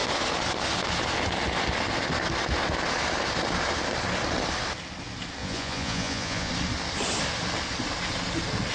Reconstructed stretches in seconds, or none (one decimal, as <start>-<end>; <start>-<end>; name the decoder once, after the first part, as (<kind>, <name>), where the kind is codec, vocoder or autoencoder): 5.4-6.5 (vocoder, Vocos)